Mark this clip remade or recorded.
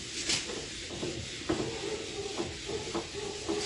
recorded